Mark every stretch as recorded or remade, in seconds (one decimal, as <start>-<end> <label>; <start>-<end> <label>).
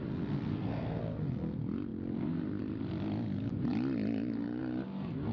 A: 0.0-0.5 recorded; 0.5-1.0 remade; 1.0-5.3 recorded